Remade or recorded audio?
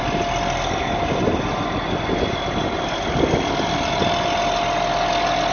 recorded